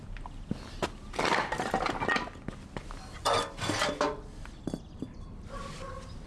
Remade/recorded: recorded